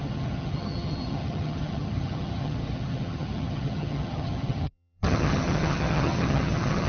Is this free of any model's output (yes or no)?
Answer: no